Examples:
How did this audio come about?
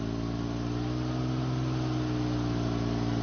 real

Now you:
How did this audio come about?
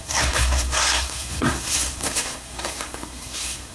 fake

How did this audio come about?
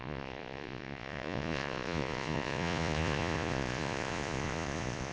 fake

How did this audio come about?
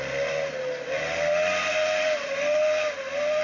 real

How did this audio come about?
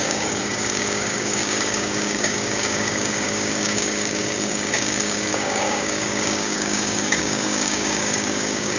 fake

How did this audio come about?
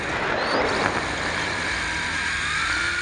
real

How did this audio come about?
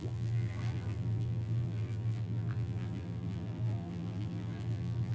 fake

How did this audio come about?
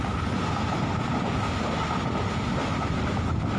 real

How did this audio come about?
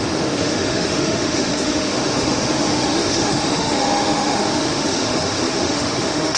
fake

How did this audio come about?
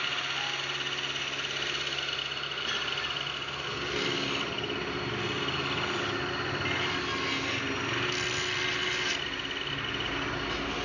real